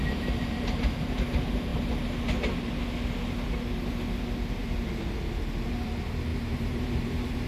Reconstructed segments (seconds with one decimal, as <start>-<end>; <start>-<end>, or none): 0.0-1.7; 5.7-7.5